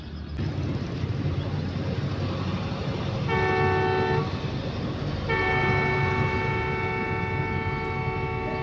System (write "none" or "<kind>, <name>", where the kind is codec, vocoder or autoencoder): none